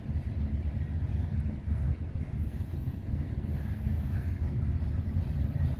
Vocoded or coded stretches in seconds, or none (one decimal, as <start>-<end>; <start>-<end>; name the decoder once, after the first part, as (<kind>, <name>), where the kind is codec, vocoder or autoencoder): 1.1-4.6 (codec, SNAC)